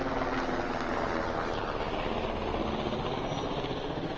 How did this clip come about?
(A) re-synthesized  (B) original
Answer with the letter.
B